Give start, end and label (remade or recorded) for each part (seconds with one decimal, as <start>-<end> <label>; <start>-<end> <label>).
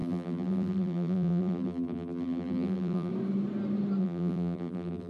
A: 0.0-3.1 remade; 3.1-4.0 recorded; 4.0-5.1 remade